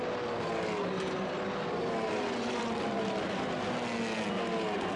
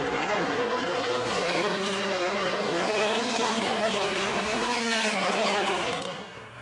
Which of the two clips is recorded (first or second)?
first